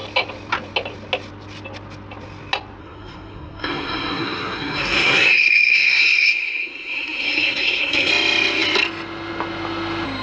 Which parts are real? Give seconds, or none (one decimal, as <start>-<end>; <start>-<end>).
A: 0.0-2.8; 8.1-10.2